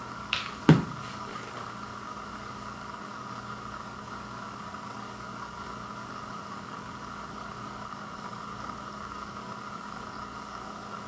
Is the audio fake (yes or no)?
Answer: yes